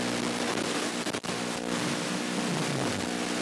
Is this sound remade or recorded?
recorded